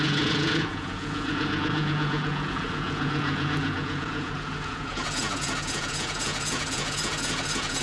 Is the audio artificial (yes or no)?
yes